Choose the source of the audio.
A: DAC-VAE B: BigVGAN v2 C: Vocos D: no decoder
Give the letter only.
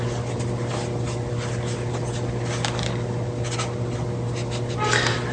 D